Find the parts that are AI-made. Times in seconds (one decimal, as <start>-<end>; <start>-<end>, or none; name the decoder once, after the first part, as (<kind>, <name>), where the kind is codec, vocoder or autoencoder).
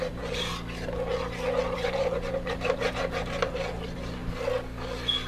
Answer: 0.0-0.5 (vocoder, BigVGAN v2); 1.1-4.2